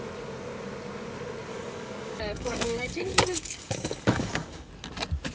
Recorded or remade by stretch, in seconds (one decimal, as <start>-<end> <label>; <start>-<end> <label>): 0.0-1.5 recorded; 1.5-4.7 remade; 4.7-5.3 recorded